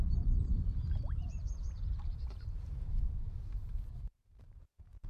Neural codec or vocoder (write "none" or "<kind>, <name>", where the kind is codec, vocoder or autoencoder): vocoder, BigVGAN v2